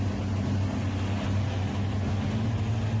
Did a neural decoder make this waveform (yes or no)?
no